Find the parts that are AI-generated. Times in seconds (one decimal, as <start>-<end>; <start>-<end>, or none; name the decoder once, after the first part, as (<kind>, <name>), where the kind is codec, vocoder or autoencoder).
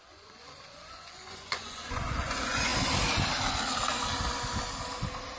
0.0-2.7 (vocoder, Vocos)